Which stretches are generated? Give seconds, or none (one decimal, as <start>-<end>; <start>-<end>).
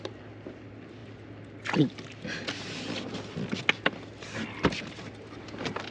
none